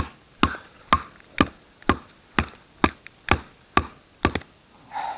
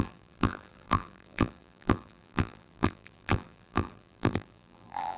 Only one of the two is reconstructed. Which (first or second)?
second